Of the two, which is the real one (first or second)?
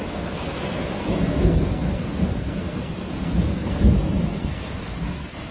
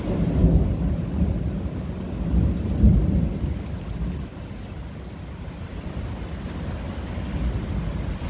second